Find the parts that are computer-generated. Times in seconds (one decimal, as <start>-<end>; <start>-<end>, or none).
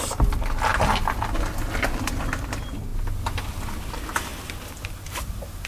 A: none